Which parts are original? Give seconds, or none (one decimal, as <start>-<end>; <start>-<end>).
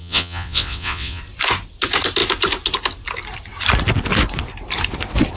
1.2-5.4